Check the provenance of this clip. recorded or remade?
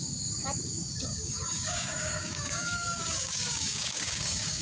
remade